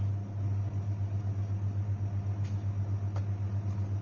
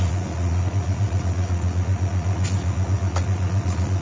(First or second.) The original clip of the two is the first